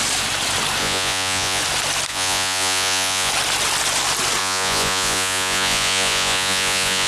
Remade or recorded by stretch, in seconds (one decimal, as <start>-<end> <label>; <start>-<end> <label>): 0.0-0.8 recorded; 0.8-1.6 remade; 1.6-2.1 recorded; 2.1-3.3 remade; 3.3-4.4 recorded; 4.4-7.1 remade